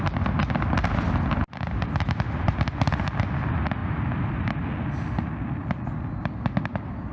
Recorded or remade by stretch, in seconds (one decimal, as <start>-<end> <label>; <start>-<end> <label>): 0.0-7.1 recorded